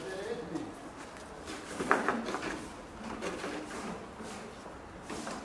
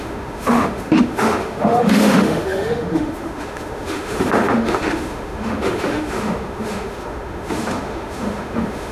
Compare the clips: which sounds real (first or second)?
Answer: first